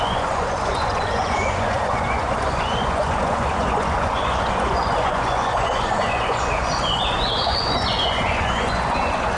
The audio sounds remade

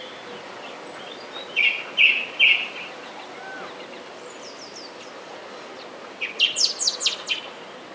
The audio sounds recorded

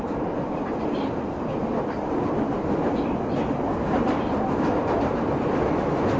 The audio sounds recorded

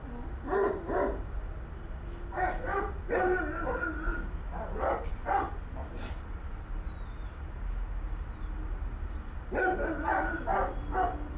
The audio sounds recorded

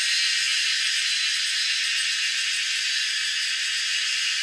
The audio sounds recorded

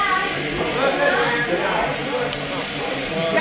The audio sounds recorded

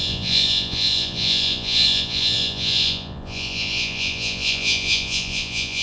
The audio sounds remade